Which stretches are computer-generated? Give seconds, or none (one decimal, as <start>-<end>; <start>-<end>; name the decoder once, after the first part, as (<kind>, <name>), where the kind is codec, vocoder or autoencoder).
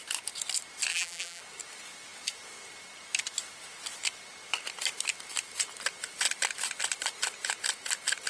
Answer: 0.9-1.4 (vocoder, BigVGAN v2)